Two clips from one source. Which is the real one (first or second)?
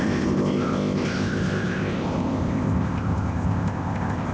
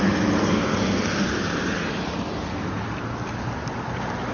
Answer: second